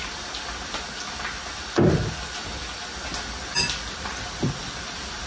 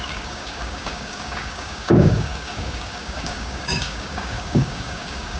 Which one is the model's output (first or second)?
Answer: second